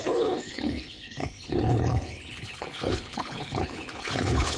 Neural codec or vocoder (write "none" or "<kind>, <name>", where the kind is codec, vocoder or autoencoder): codec, HILCodec